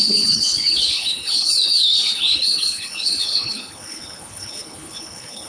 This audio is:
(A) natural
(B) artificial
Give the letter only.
B